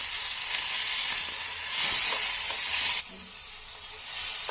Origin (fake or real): real